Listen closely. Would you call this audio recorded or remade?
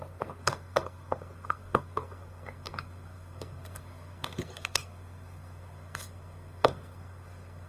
remade